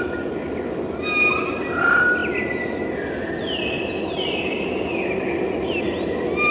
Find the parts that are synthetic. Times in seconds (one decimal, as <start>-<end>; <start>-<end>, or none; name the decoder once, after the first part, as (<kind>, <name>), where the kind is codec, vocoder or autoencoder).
none